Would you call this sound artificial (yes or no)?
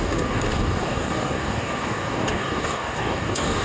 yes